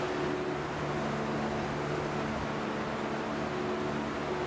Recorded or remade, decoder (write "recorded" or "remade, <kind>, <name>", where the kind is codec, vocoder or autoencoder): recorded